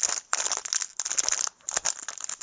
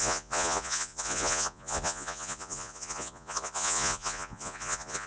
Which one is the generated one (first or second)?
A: second